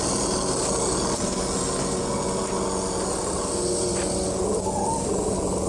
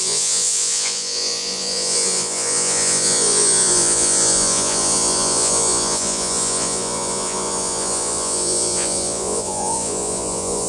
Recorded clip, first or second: first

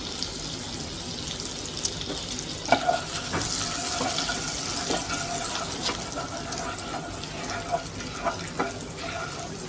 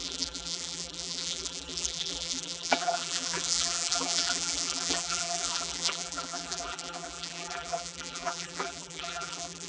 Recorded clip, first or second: first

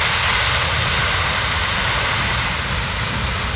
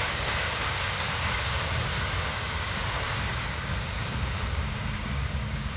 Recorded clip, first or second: first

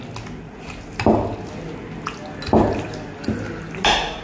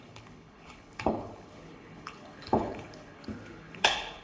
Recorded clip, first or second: first